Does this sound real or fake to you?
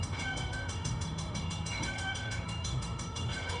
fake